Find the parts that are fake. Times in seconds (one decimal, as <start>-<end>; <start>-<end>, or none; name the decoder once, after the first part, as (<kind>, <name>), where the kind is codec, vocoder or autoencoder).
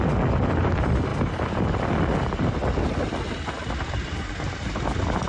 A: none